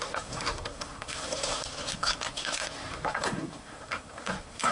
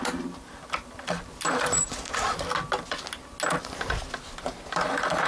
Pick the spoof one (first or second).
first